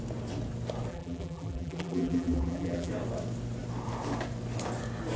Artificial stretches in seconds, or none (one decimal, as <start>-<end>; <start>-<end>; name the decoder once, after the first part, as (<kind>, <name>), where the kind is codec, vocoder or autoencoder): 0.9-2.9 (vocoder, BigVGAN v2)